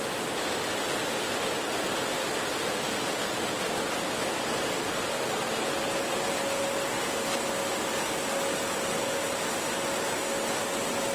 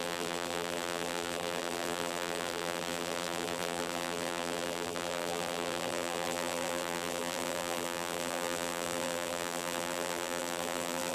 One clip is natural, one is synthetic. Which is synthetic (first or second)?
second